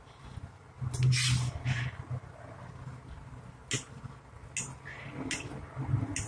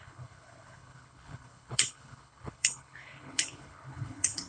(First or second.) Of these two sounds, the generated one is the second